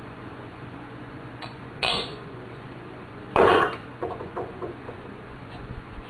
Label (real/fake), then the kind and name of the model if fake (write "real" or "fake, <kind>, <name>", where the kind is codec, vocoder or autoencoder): fake, vocoder, Vocos